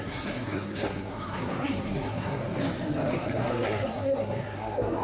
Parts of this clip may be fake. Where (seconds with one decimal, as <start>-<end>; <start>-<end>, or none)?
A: 0.0-2.4; 3.1-5.0